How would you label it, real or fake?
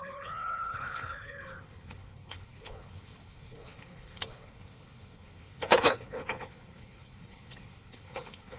fake